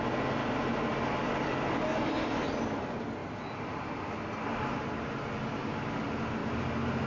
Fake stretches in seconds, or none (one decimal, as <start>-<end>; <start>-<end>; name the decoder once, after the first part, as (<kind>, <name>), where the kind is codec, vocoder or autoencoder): none